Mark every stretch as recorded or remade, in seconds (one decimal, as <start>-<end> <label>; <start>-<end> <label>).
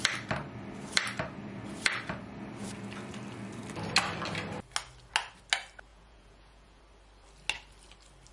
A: 0.0-5.9 recorded; 5.9-6.8 remade; 6.8-8.3 recorded